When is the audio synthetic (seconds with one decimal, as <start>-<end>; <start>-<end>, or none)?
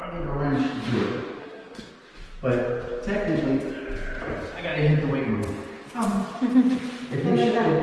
1.4-1.9